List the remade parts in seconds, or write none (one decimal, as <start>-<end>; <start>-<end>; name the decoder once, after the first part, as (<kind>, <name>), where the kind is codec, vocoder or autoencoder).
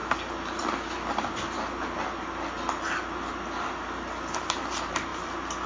none